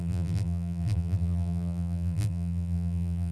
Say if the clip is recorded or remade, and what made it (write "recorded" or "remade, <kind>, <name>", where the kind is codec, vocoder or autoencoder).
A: remade, vocoder, BigVGAN v2